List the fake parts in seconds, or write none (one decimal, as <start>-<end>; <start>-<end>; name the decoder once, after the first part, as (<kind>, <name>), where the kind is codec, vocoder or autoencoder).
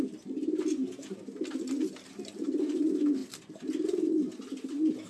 none